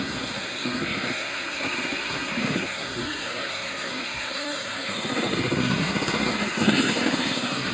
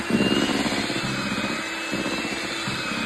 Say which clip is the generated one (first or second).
first